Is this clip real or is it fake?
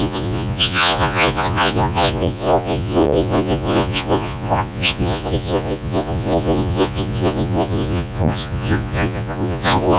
fake